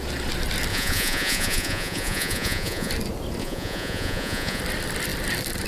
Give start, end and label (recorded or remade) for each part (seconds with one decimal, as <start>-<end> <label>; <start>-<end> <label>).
0.0-0.7 recorded; 0.7-2.9 remade; 2.9-3.4 recorded; 3.4-4.6 remade; 4.6-5.7 recorded